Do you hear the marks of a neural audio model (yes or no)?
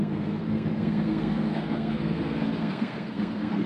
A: yes